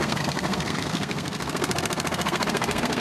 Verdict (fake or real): fake